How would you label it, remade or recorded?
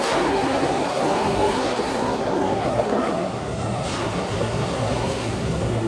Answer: remade